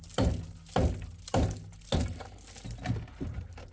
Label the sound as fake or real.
real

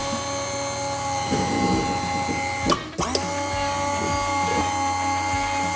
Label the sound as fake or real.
real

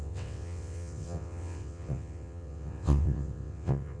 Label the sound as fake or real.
fake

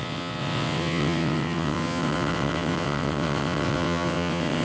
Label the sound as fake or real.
fake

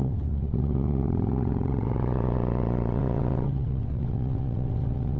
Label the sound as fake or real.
fake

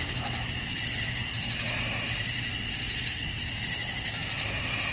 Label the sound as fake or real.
real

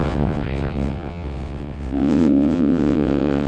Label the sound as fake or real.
fake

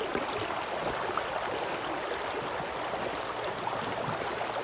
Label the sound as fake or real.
real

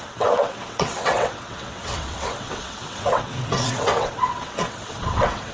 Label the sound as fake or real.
fake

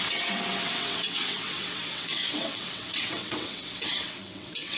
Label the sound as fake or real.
fake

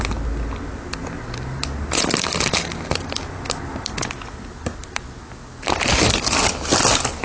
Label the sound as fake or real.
real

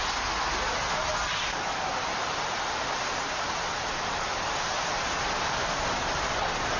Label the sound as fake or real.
real